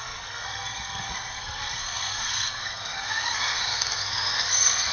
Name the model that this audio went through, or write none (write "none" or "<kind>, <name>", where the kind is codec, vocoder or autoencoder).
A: codec, SNAC